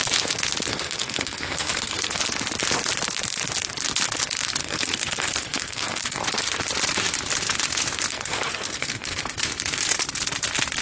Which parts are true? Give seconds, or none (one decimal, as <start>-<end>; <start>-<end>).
0.0-0.7; 2.2-4.6; 6.2-8.1; 9.4-10.8